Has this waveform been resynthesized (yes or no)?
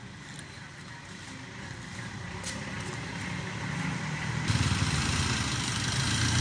no